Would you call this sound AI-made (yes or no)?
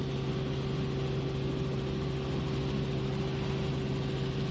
no